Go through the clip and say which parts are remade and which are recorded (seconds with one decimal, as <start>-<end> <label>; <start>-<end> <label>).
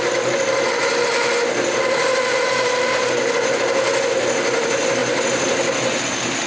0.0-6.5 recorded